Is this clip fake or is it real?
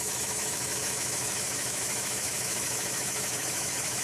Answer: fake